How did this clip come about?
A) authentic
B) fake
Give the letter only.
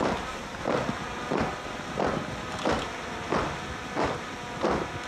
A